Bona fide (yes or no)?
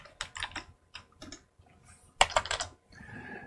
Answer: yes